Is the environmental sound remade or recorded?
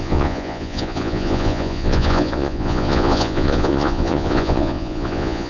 remade